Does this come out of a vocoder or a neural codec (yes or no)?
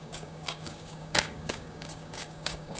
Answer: yes